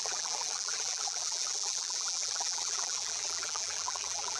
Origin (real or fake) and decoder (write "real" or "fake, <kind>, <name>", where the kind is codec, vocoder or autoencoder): fake, vocoder, BigVGAN v2